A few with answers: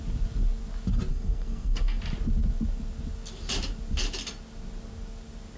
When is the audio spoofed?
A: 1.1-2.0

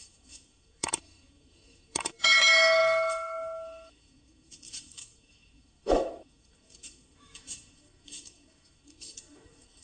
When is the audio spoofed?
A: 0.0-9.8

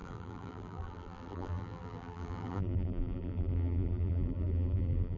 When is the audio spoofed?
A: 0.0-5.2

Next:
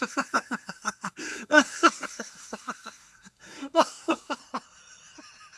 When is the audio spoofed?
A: 0.0-4.4

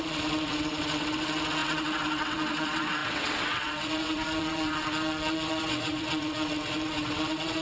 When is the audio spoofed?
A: 0.0-7.6

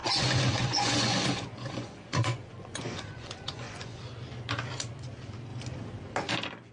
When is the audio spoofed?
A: 0.0-4.0